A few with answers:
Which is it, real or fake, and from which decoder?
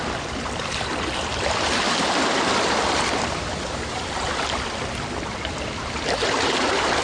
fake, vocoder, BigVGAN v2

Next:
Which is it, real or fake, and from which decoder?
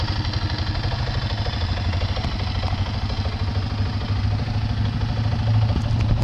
real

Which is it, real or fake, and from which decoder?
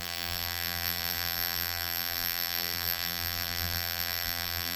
fake, vocoder, BigVGAN v2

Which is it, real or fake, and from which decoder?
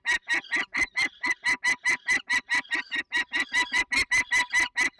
real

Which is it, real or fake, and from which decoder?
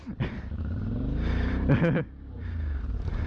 fake, vocoder, BigVGAN v2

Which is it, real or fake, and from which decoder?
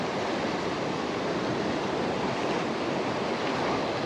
real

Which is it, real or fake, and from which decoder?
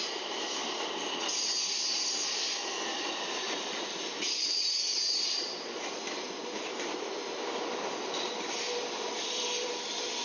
fake, vocoder, BigVGAN v2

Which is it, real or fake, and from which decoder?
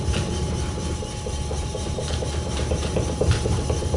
fake, vocoder, BigVGAN v2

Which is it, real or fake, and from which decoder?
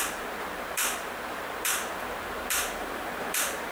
fake, vocoder, BigVGAN v2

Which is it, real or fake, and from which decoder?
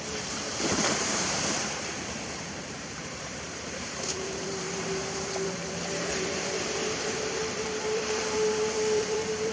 fake, vocoder, BigVGAN v2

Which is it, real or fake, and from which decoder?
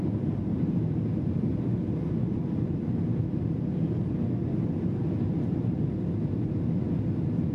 real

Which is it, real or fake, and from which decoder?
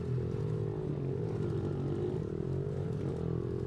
real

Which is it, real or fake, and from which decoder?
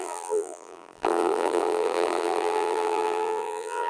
fake, vocoder, BigVGAN v2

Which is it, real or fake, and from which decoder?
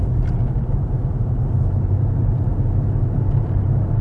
fake, vocoder, BigVGAN v2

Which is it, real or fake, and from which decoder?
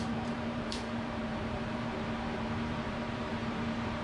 fake, vocoder, BigVGAN v2